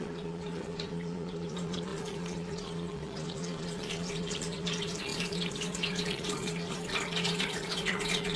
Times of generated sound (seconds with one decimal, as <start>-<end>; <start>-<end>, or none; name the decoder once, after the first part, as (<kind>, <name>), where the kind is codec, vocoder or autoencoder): 0.0-8.4 (vocoder, Vocos)

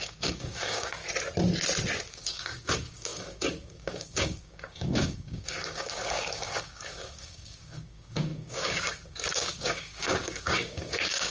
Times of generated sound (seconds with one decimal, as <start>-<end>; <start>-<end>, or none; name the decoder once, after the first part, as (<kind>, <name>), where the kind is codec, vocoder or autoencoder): 0.0-1.0 (codec, DAC); 2.1-11.3

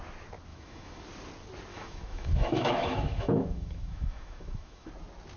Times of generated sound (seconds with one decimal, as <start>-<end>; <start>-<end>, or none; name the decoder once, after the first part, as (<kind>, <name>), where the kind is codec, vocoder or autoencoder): 0.5-1.0 (autoencoder, DAC-VAE); 1.7-4.9

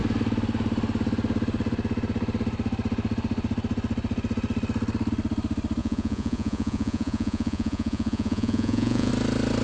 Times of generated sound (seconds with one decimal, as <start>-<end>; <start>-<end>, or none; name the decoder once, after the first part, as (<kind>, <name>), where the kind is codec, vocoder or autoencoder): 5.8-9.1 (vocoder, Vocos)